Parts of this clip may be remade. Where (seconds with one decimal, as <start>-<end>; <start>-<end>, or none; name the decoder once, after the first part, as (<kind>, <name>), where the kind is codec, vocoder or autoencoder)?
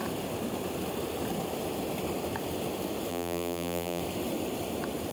3.1-4.0 (vocoder, BigVGAN v2)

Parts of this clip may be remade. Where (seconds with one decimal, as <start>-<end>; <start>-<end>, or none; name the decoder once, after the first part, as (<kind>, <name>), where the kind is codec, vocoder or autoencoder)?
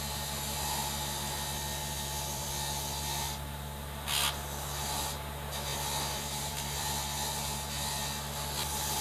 1.8-2.5 (vocoder, BigVGAN v2); 5.7-6.9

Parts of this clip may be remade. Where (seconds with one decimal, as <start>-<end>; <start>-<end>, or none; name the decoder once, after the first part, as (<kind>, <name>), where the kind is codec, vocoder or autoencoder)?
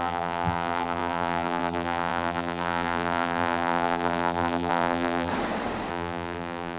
0.0-5.3 (vocoder, BigVGAN v2); 5.9-6.8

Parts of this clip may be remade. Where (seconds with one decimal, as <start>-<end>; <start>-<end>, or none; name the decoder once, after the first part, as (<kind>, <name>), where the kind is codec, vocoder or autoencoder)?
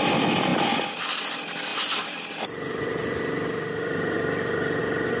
0.5-1.0 (vocoder, BigVGAN v2); 1.7-4.8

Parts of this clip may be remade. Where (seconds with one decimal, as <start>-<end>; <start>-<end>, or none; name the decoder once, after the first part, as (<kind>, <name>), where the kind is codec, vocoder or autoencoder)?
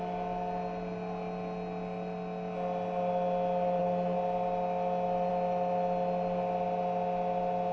none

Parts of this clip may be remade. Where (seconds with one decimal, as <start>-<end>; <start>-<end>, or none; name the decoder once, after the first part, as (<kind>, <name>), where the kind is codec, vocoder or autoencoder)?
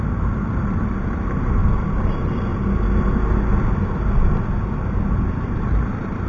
0.0-1.6 (vocoder, BigVGAN v2); 2.1-2.5; 5.4-6.3